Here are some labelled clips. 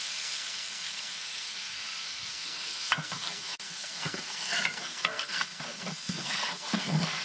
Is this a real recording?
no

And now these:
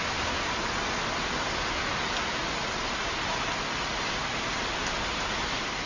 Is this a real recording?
yes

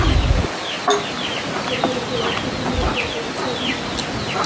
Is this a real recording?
yes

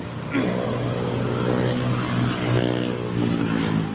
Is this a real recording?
yes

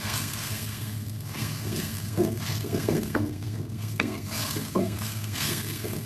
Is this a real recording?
no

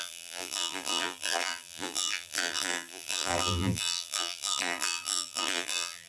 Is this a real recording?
no